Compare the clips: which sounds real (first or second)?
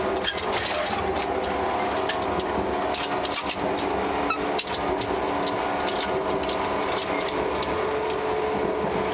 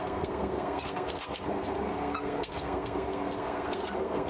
first